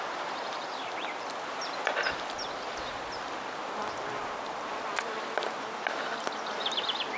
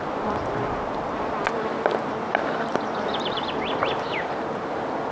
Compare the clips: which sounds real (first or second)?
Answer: first